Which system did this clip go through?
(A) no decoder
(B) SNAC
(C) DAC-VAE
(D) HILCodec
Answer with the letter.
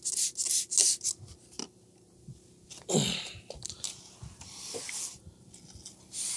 A